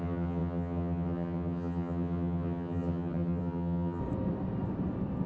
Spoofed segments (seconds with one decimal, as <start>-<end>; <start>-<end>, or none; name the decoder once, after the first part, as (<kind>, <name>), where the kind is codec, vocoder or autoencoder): 0.0-4.0 (vocoder, HiFi-GAN)